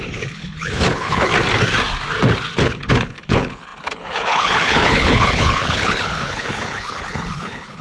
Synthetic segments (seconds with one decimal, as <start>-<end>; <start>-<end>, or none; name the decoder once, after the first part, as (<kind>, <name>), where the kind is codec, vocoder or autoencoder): 0.0-1.3 (codec, HILCodec); 2.6-7.8